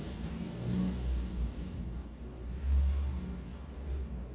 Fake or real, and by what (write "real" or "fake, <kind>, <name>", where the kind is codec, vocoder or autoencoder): fake, codec, DAC